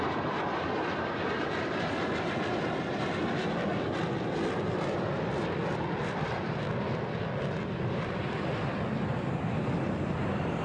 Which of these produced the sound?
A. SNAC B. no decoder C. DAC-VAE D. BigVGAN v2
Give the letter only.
D